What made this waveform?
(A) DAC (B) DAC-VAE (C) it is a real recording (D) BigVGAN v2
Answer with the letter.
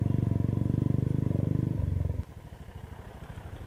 C